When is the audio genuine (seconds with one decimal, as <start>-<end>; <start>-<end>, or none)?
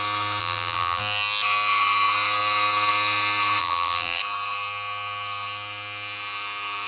0.0-0.4; 1.0-3.6; 4.2-6.9